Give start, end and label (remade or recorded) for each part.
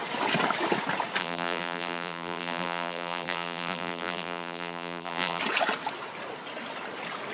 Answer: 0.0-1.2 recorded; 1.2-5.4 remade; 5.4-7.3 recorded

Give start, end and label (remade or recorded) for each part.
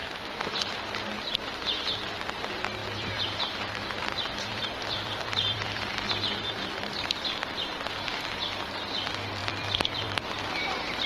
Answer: 0.0-0.7 remade; 0.7-2.8 recorded; 2.8-6.9 remade; 6.9-9.4 recorded; 9.4-11.1 remade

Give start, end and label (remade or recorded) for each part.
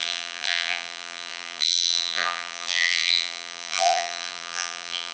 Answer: 0.0-5.1 remade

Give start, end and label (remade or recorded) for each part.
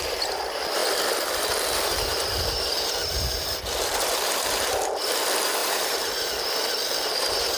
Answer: 0.0-5.6 recorded; 5.6-6.4 remade; 6.4-7.6 recorded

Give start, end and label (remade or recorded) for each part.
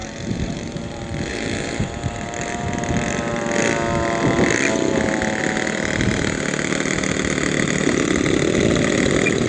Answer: 0.0-0.9 remade; 0.9-1.3 recorded; 1.3-3.3 remade; 3.3-9.5 recorded